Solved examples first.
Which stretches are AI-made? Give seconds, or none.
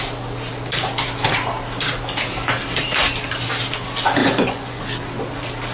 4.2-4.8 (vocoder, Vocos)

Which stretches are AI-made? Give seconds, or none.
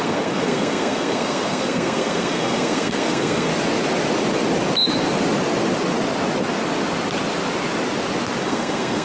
0.0-3.5 (codec, SNAC); 8.4-9.0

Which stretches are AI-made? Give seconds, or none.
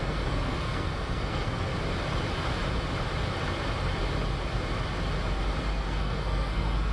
0.0-1.7 (codec, SNAC); 5.6-6.9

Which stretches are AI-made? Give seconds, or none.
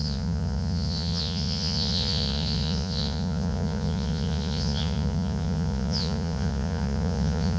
0.0-7.6 (vocoder, Vocos)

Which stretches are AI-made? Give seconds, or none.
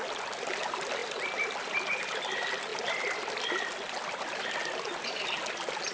none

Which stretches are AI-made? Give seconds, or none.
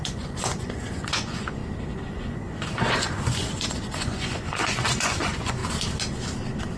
0.0-1.6 (vocoder, Vocos); 2.1-5.6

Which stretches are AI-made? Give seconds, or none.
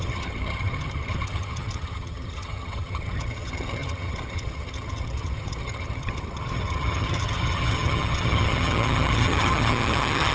0.0-10.3 (vocoder, HiFi-GAN)